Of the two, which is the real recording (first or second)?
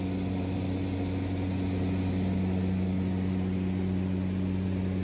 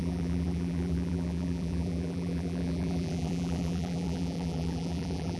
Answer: first